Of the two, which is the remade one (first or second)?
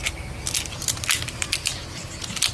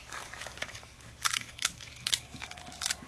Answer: second